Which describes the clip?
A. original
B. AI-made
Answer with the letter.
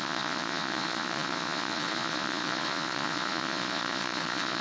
B